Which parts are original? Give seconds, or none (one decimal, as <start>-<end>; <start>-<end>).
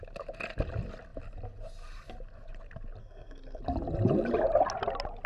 0.0-3.0; 3.6-5.3